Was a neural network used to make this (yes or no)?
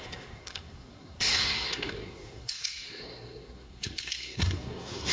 yes